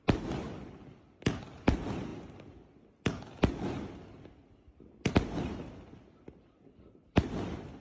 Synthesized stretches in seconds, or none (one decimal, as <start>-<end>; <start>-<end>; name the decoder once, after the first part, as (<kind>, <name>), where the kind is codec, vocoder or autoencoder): none